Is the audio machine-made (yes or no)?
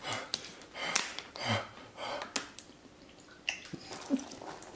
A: no